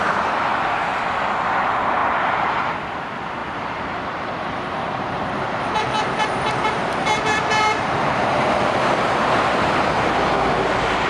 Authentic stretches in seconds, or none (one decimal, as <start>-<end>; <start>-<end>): 0.0-3.4; 8.6-11.1